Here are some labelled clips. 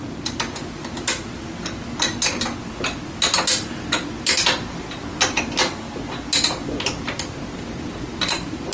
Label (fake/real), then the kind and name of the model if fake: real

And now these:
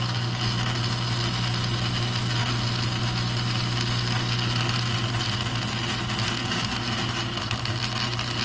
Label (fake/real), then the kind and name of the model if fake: real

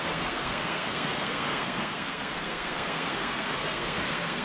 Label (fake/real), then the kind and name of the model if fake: fake, codec, SNAC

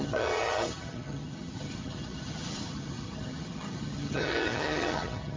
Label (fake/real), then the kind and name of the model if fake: fake, vocoder, HiFi-GAN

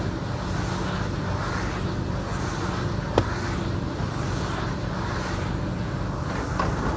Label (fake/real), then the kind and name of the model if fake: real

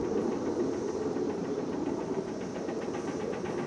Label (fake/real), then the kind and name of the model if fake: real